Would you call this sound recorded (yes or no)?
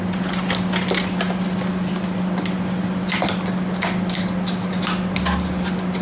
yes